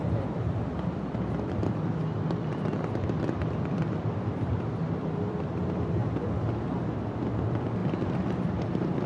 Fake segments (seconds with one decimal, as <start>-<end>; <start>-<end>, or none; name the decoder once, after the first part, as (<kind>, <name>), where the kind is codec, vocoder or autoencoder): 0.0-6.0 (vocoder, BigVGAN v2); 6.8-9.1